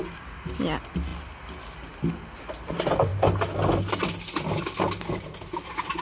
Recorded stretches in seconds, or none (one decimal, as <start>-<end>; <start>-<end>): 0.0-6.0